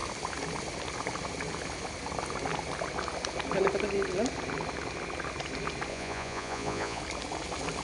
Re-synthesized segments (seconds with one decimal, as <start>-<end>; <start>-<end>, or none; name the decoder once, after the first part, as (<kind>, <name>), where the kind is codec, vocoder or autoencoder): 5.9-7.0 (vocoder, Vocos)